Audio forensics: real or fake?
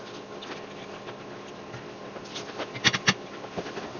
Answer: real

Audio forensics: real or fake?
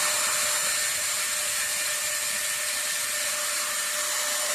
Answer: real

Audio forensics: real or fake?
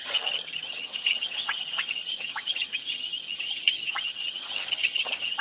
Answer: fake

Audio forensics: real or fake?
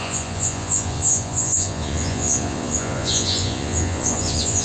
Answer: fake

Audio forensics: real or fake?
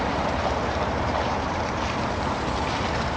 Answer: fake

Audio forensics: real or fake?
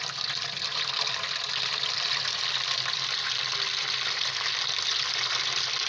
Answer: real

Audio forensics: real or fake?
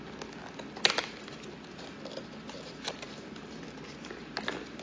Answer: real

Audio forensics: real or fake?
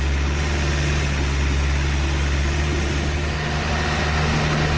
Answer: real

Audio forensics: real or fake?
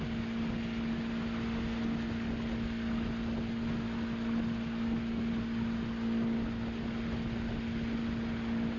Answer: real